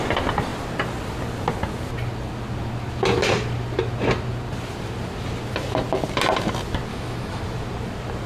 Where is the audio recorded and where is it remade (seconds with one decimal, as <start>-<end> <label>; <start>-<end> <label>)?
0.0-6.9 recorded; 6.9-7.4 remade; 7.4-8.3 recorded